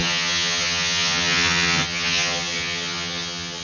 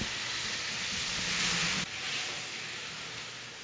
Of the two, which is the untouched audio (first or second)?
second